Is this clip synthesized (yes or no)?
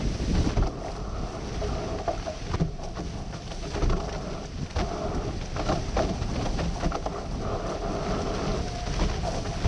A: no